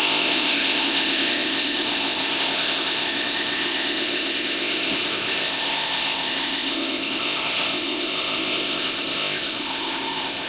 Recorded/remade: remade